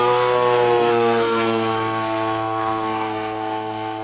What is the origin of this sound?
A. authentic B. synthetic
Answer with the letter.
B